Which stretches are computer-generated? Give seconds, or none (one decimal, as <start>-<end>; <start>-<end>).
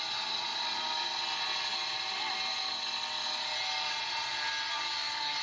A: none